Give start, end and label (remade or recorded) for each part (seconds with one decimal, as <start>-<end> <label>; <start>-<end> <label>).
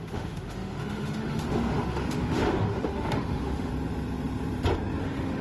0.0-3.7 remade; 3.7-5.0 recorded; 5.0-5.4 remade